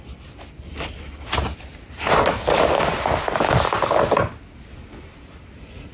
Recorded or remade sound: recorded